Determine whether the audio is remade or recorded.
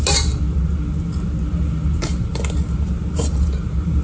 recorded